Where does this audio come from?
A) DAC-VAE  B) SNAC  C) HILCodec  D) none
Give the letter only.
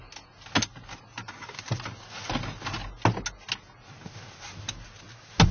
D